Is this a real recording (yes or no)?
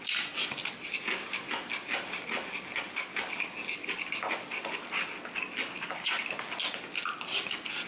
yes